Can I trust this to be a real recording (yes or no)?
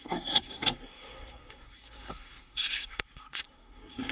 no